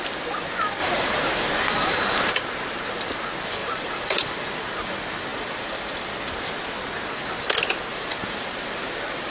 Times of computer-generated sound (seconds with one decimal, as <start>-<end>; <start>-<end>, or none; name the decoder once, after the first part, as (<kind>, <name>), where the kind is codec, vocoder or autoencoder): 0.8-2.3 (vocoder, BigVGAN v2); 3.6-4.5; 5.3-6.1; 7.9-8.8